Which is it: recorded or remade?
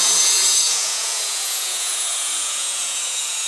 remade